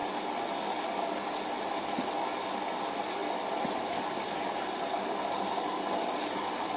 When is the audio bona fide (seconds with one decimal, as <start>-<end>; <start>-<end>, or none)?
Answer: 0.0-6.8